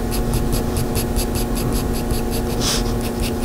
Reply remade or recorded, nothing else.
recorded